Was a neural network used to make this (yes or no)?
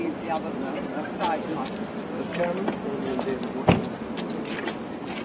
no